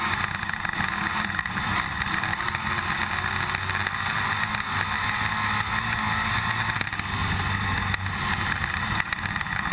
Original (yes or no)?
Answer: yes